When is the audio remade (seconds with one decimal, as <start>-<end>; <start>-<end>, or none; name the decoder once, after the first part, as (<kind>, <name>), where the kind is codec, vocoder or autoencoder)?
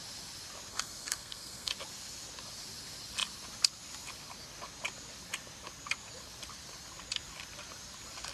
0.7-1.7 (codec, SNAC)